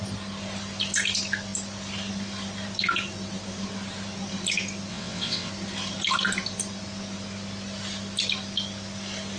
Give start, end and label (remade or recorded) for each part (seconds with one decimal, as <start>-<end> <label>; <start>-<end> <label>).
0.0-4.9 recorded; 4.9-5.5 remade; 5.5-9.4 recorded